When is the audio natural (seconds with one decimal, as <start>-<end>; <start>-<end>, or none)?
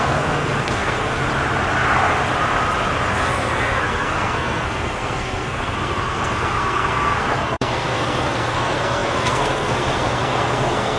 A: 1.2-3.1